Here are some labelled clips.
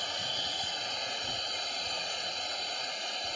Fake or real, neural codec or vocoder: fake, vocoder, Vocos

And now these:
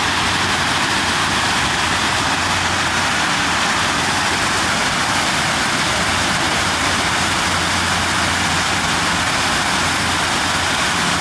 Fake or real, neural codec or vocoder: real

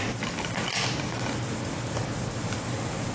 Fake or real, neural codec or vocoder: real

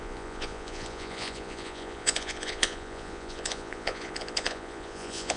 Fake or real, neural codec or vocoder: fake, vocoder, Vocos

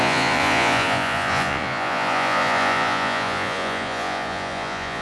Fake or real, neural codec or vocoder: fake, vocoder, Vocos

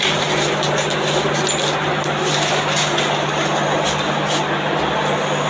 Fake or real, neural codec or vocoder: real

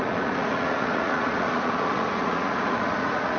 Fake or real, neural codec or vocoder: fake, vocoder, Vocos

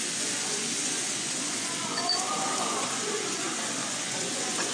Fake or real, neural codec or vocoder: fake, vocoder, Vocos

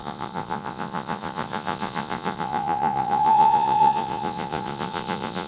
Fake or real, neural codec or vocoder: fake, vocoder, Vocos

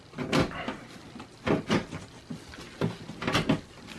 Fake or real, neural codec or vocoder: real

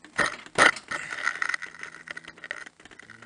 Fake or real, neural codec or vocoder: real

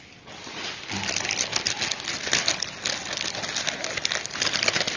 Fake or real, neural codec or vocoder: real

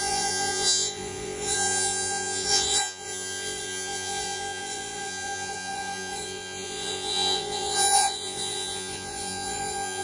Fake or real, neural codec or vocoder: fake, vocoder, Vocos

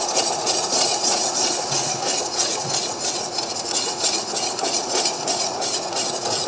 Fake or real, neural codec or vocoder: fake, vocoder, Vocos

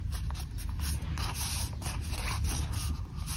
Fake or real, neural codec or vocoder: real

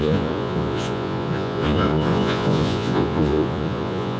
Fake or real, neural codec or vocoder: fake, vocoder, Vocos